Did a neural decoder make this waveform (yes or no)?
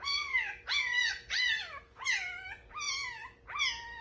yes